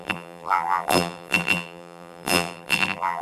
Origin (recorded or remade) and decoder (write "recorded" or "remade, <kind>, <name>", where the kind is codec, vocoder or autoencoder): remade, vocoder, BigVGAN v2